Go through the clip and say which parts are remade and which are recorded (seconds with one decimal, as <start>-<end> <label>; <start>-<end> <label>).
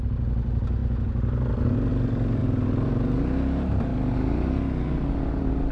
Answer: 0.0-5.7 recorded